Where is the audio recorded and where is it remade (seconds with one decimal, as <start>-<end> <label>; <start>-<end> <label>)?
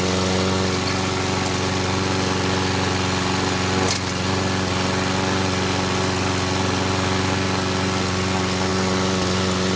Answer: 0.0-9.8 recorded